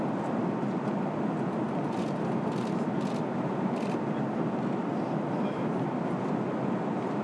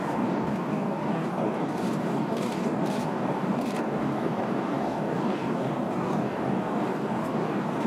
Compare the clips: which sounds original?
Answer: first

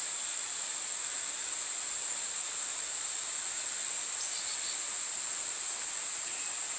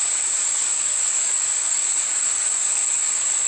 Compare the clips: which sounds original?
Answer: first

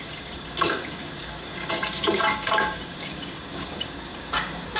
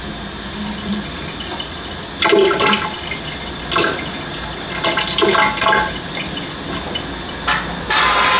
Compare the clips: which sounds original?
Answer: second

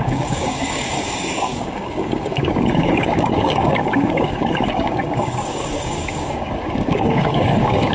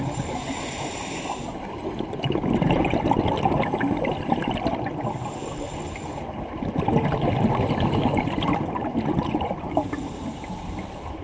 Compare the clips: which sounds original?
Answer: second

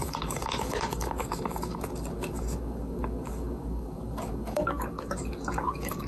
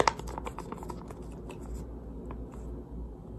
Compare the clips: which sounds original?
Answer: second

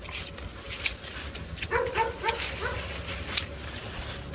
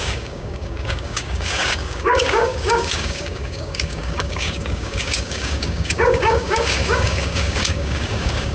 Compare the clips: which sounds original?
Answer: first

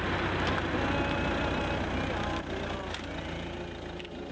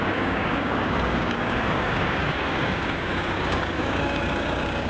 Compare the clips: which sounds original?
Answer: first